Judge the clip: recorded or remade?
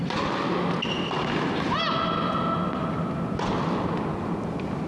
recorded